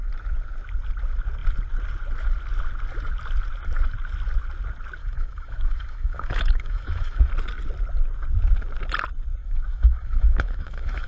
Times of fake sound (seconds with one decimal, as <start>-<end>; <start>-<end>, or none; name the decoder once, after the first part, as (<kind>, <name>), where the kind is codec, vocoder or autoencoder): 5.0-7.3 (autoencoder, DAC-VAE); 9.4-11.1